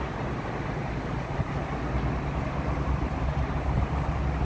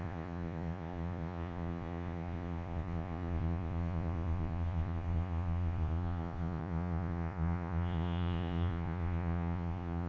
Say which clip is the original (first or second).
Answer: first